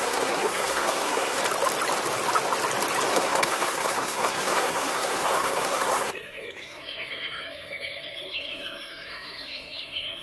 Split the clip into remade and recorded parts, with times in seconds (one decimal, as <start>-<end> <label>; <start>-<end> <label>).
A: 0.0-1.4 remade; 1.4-3.1 recorded; 3.1-10.2 remade